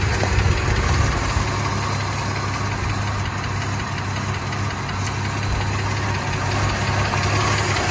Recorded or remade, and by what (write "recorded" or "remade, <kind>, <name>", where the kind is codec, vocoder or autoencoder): recorded